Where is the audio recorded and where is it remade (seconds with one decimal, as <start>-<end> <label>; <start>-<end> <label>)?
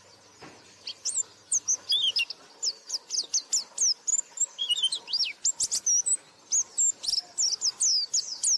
0.0-8.6 recorded